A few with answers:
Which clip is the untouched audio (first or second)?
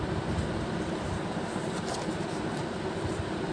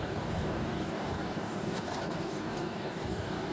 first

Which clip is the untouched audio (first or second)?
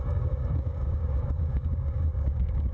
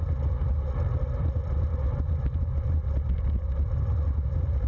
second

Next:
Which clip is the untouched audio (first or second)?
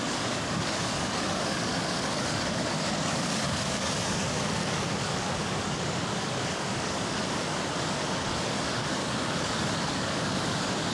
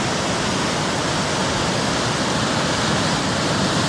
second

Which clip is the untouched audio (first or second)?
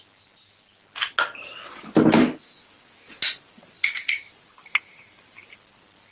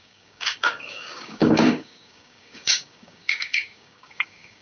first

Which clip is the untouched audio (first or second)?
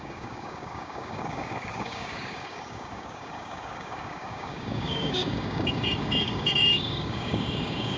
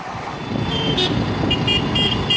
second